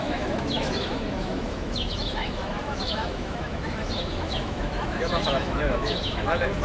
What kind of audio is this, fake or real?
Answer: fake